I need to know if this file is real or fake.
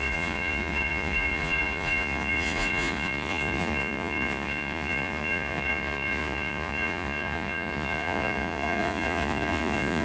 fake